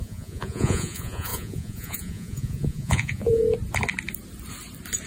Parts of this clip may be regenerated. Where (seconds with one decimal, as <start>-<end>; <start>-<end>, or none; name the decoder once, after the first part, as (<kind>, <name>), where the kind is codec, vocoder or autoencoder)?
0.0-3.4 (vocoder, Vocos)